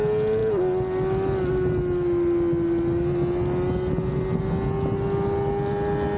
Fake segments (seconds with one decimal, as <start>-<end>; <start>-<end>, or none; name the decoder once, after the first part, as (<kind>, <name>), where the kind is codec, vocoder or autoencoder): none